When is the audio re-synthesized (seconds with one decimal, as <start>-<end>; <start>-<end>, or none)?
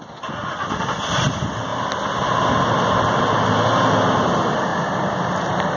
none